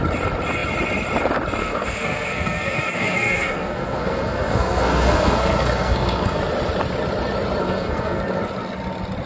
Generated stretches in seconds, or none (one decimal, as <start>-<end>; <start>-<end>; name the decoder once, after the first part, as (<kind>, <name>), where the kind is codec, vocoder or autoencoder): 1.6-6.4 (codec, SNAC); 7.6-8.2